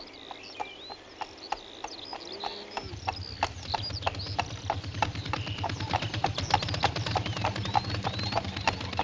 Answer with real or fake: real